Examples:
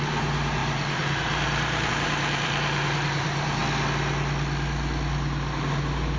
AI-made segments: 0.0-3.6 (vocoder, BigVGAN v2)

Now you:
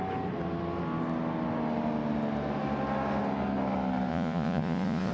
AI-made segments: 4.1-5.1 (vocoder, Vocos)

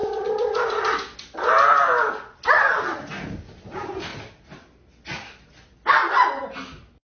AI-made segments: none

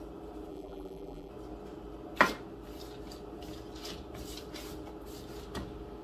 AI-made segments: 0.5-1.3 (vocoder, BigVGAN v2)

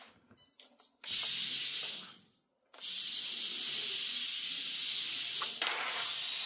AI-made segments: none

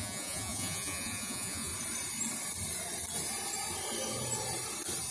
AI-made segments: 0.0-1.7 (vocoder, Vocos)